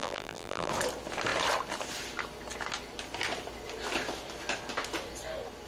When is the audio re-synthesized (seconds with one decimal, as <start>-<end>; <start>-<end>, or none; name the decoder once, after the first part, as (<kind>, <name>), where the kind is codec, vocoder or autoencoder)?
0.0-0.7 (vocoder, BigVGAN v2)